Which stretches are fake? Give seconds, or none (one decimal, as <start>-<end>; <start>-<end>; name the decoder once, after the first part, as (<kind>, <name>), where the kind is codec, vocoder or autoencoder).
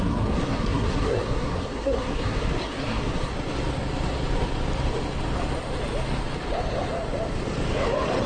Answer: 0.0-3.3 (codec, SNAC)